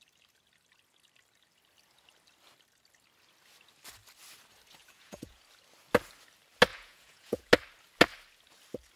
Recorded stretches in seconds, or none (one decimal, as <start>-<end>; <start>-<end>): 0.0-4.8; 5.4-6.7; 7.5-9.0